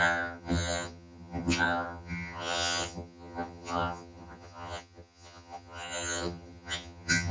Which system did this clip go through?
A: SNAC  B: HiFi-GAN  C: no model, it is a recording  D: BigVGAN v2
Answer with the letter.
B